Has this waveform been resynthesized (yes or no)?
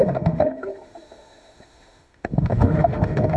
yes